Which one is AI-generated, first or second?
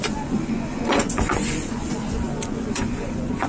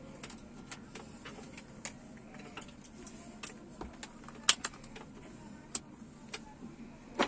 first